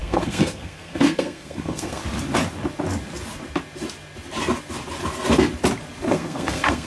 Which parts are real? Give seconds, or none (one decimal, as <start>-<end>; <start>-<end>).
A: 2.0-6.1